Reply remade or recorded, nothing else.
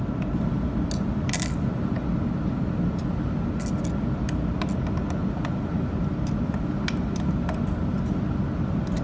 recorded